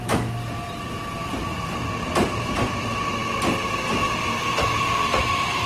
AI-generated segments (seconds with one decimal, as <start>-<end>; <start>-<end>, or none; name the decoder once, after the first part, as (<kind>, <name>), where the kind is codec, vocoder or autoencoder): none